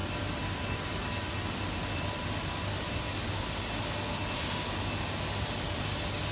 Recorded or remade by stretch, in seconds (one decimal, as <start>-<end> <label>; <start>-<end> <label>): 0.0-6.3 recorded